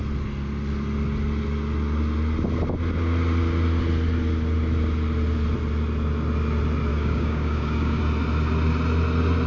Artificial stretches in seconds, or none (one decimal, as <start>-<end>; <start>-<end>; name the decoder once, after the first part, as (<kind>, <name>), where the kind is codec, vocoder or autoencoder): 6.9-8.0 (codec, DAC)